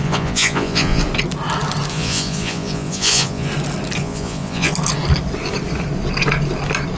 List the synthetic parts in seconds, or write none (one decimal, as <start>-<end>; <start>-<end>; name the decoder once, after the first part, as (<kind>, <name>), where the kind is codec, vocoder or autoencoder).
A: 0.0-1.0 (vocoder, Vocos); 1.9-3.5; 4.0-4.7